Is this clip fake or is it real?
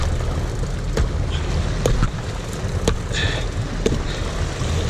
real